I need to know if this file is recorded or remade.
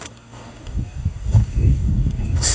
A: remade